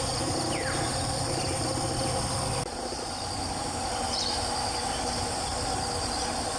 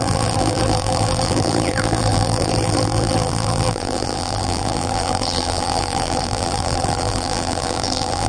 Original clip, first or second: first